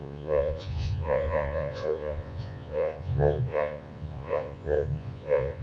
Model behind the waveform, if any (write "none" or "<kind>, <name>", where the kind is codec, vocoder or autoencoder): vocoder, Vocos